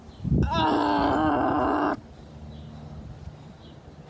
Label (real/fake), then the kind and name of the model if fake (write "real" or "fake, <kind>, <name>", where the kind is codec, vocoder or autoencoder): real